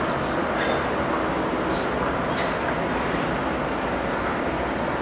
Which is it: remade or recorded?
recorded